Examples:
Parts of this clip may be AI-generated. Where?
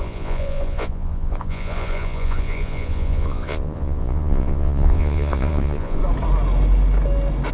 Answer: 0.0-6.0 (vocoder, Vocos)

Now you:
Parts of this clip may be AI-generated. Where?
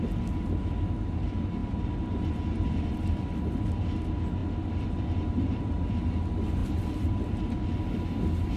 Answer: none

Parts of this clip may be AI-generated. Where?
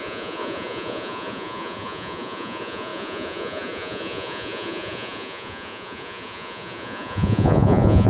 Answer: 0.0-8.1 (vocoder, Vocos)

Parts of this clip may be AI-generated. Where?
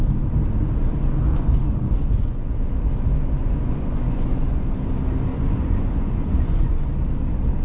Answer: 1.3-2.5 (vocoder, Vocos); 3.4-4.6; 5.3-6.9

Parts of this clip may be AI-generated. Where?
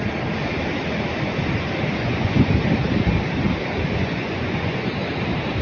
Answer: 1.9-2.5 (vocoder, Vocos); 4.0-4.9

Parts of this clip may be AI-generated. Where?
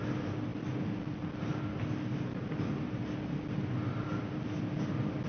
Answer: none